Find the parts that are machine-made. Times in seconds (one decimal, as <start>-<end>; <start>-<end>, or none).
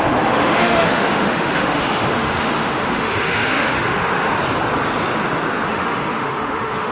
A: 0.0-4.3; 5.7-6.9